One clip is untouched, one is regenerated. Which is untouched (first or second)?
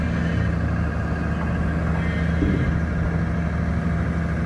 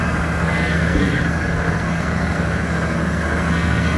first